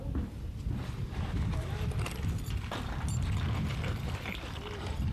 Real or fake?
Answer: real